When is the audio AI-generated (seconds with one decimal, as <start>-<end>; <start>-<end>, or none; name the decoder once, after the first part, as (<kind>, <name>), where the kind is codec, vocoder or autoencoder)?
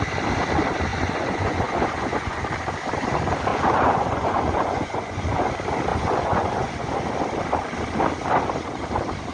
0.9-2.4 (vocoder, Vocos); 3.5-5.5; 5.9-6.9